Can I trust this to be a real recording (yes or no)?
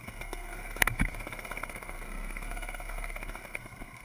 no